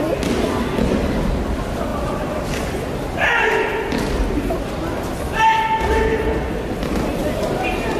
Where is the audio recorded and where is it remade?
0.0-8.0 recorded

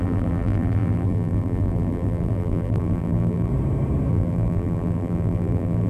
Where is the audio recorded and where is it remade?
0.0-3.5 remade; 3.5-4.1 recorded; 4.1-5.9 remade

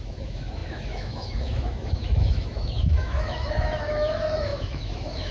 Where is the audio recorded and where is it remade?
0.0-5.3 remade